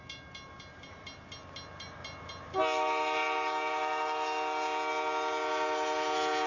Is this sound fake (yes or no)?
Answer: no